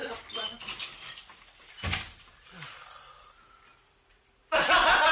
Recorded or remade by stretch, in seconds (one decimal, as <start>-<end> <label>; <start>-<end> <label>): 0.0-5.1 recorded